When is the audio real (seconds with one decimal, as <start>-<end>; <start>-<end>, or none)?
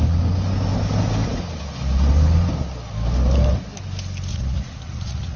0.0-4.3